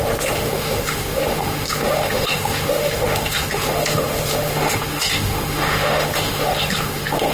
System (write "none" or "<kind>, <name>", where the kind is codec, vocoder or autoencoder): autoencoder, DAC-VAE